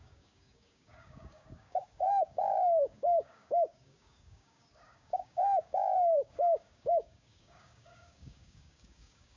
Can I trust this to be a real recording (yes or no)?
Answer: no